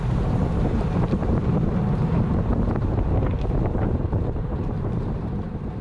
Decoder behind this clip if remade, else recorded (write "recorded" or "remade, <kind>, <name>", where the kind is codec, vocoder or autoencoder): remade, vocoder, BigVGAN v2